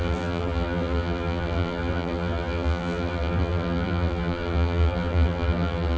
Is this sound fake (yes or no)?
yes